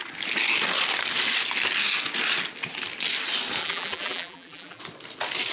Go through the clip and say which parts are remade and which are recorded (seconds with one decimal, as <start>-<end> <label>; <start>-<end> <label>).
0.0-3.6 recorded; 3.6-4.8 remade; 4.8-5.5 recorded